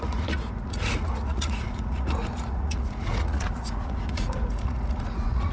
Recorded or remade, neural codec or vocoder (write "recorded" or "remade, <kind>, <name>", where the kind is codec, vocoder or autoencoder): remade, vocoder, Vocos